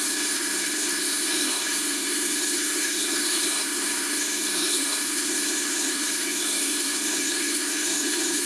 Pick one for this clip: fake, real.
fake